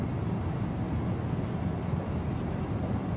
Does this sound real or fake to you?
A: real